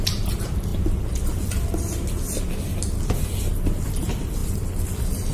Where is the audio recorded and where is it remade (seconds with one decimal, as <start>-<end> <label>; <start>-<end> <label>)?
0.0-0.7 remade; 0.7-3.9 recorded; 3.9-4.4 remade; 4.4-5.3 recorded